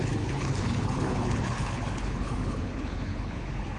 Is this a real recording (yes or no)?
no